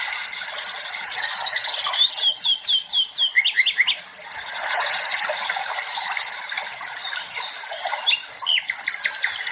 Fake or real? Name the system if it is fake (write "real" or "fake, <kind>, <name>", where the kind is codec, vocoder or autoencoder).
real